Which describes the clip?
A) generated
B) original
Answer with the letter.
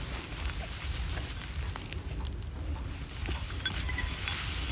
B